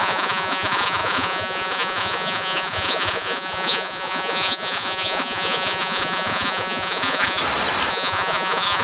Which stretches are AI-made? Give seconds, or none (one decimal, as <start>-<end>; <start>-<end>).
0.0-7.4; 7.9-8.8